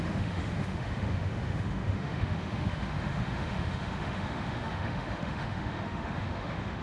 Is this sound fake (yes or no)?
yes